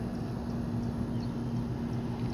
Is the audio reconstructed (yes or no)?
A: no